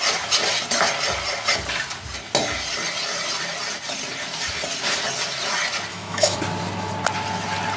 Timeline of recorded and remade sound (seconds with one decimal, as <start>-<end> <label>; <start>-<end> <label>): 0.0-5.9 recorded; 5.9-6.4 remade; 6.4-7.8 recorded